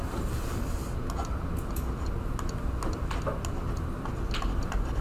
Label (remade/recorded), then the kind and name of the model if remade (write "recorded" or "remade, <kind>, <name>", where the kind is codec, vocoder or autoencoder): recorded